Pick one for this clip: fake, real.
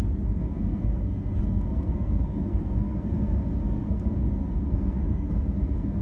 fake